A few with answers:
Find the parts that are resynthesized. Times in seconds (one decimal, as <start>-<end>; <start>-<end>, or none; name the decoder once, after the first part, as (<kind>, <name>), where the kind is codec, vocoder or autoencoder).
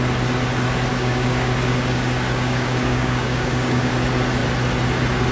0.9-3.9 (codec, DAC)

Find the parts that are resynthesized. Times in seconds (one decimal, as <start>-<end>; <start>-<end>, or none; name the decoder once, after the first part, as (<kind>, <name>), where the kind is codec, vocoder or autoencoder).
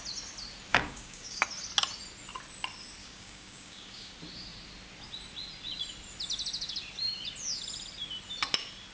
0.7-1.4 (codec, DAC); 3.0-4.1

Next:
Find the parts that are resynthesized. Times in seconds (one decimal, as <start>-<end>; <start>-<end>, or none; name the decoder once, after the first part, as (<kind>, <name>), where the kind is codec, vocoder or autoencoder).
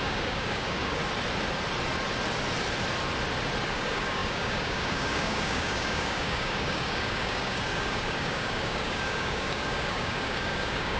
0.0-1.0 (codec, DAC); 3.7-11.0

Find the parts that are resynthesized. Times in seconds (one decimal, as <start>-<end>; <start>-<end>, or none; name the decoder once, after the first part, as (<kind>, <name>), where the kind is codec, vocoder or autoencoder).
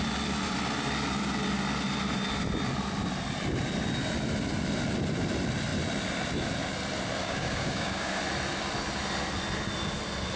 7.2-8.2 (codec, DAC)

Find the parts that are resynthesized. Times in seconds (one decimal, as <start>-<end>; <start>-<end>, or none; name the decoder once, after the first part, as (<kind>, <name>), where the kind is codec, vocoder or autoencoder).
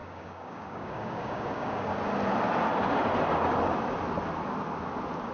0.0-1.9 (codec, DAC)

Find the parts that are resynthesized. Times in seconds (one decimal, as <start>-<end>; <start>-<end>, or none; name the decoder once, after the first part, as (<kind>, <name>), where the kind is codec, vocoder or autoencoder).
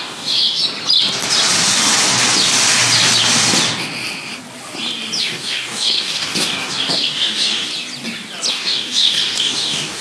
0.0-0.6 (codec, DAC); 5.2-7.7; 8.5-10.0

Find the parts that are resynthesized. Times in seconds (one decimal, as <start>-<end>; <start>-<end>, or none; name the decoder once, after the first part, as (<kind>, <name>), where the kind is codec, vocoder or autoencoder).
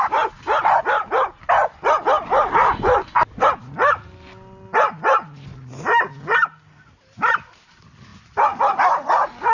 none